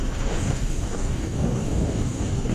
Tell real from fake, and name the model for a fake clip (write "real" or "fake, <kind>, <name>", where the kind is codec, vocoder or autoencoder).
fake, codec, DAC